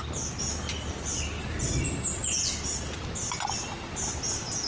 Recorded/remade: recorded